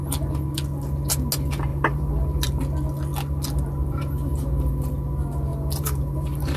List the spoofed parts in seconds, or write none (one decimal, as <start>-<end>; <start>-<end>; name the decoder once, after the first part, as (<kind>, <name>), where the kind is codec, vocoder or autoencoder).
1.7-2.6 (vocoder, BigVGAN v2); 5.5-6.6